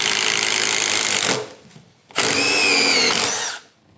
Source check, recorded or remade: recorded